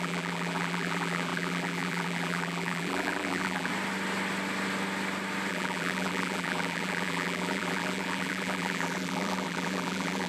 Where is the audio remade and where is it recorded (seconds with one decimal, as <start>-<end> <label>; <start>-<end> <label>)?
0.0-3.7 remade; 3.7-5.5 recorded; 5.5-10.3 remade